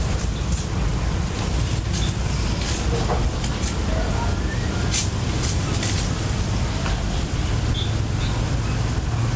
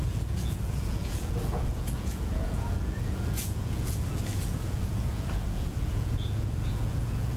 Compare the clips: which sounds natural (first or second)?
first